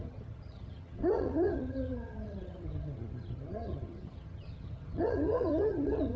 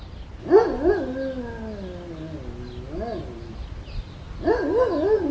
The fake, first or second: first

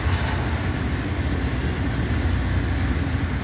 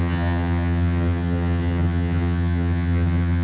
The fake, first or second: second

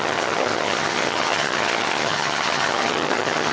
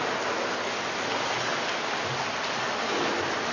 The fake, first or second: first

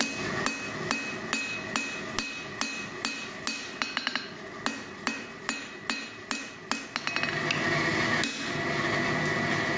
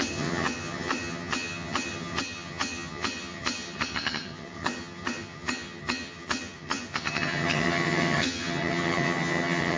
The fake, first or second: second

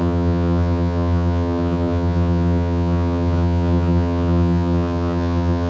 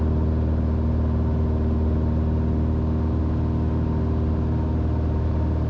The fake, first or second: first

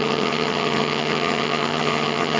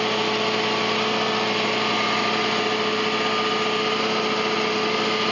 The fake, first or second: first